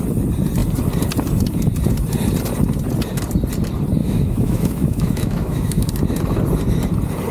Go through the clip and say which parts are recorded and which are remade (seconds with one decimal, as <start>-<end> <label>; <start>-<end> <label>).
0.0-4.0 recorded; 4.0-5.9 remade; 5.9-7.3 recorded